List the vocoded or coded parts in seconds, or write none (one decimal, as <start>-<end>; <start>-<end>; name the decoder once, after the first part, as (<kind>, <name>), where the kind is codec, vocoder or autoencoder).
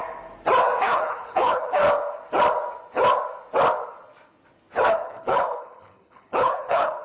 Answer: 0.8-1.8 (codec, HILCodec); 4.9-7.0